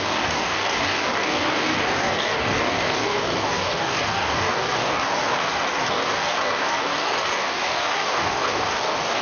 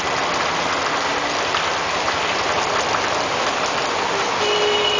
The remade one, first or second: first